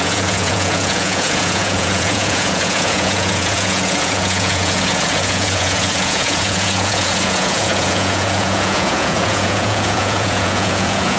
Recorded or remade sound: remade